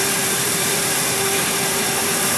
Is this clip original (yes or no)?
no